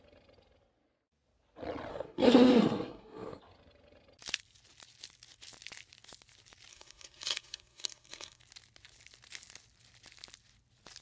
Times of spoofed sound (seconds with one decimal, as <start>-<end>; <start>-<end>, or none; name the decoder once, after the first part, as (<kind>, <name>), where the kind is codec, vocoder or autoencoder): 1.9-3.4 (codec, SNAC); 6.7-8.4